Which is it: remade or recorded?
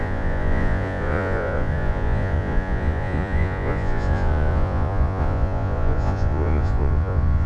remade